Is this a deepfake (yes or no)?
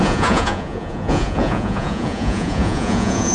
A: yes